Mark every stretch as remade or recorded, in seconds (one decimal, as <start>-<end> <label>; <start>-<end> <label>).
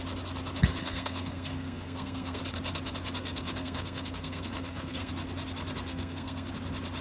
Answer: 0.0-0.8 recorded; 0.8-2.4 remade; 2.4-3.2 recorded; 3.2-5.1 remade; 5.1-5.9 recorded; 5.9-6.5 remade; 6.5-7.0 recorded